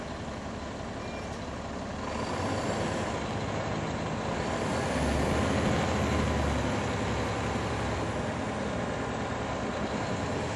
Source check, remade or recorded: recorded